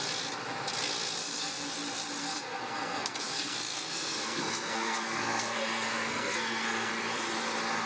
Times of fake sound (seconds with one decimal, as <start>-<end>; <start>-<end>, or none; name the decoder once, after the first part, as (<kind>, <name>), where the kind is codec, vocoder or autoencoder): 1.2-1.7 (codec, SNAC); 2.2-6.9